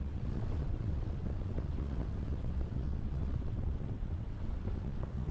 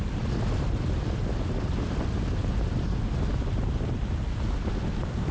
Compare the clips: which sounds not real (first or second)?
first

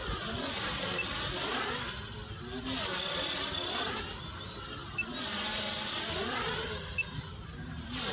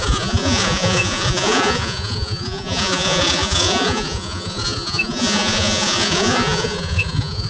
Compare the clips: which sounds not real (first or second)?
second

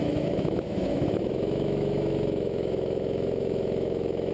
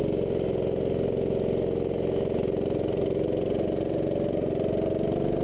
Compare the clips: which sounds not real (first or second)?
first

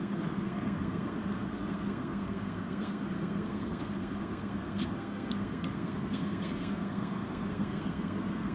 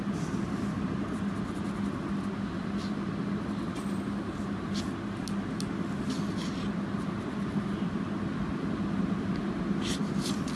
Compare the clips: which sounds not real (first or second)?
first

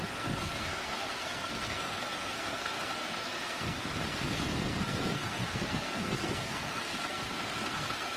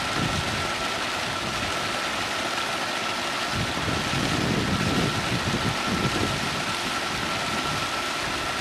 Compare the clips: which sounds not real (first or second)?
first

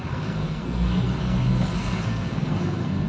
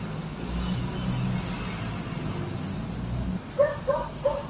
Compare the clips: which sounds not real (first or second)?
first